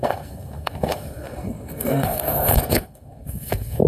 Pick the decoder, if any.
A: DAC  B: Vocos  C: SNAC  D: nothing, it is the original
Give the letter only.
C